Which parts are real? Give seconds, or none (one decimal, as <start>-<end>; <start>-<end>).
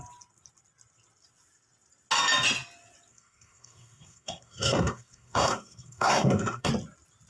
0.0-3.1; 6.7-7.3